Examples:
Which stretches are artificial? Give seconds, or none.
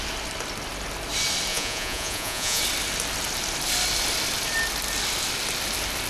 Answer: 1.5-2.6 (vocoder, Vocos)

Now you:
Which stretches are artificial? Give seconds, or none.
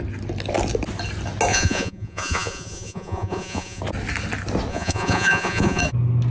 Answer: 1.5-3.8 (vocoder, Vocos); 4.7-5.8